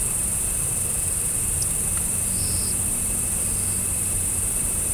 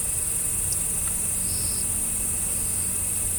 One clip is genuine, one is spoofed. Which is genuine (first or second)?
second